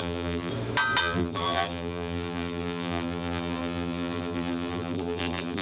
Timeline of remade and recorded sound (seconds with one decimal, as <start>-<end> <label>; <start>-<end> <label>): 0.0-0.5 remade; 0.5-1.0 recorded; 1.0-5.6 remade

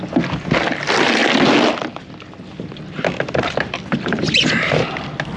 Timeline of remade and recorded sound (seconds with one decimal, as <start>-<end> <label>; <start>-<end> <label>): 0.0-5.4 recorded